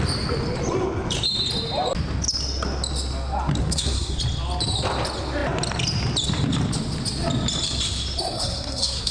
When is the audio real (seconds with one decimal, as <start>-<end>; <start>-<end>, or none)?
0.0-3.6; 4.2-8.2